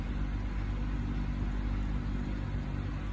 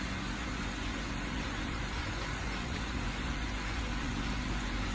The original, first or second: first